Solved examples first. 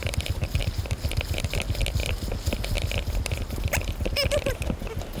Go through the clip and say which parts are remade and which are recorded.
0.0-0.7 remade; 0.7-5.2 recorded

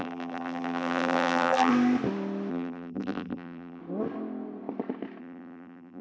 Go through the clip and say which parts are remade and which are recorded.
0.0-1.7 remade; 1.7-2.5 recorded; 2.5-3.8 remade; 3.8-5.2 recorded; 5.2-6.0 remade

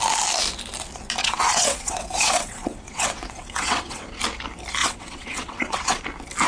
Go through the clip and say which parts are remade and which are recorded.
0.0-1.2 recorded; 1.2-4.2 remade; 4.2-4.8 recorded; 4.8-6.0 remade; 6.0-6.5 recorded

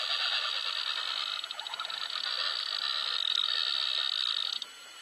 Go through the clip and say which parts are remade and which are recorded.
0.0-5.0 recorded